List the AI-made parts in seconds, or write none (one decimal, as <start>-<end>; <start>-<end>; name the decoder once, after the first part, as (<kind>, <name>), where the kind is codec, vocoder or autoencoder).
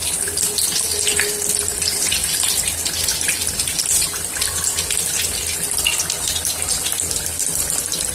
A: none